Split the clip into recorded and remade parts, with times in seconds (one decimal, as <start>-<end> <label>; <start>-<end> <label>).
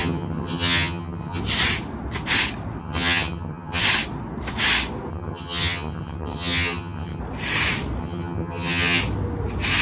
0.0-1.4 remade; 1.4-2.8 recorded; 2.8-3.8 remade; 3.8-5.1 recorded; 5.1-7.2 remade; 7.2-8.0 recorded; 8.0-9.0 remade; 9.0-9.8 recorded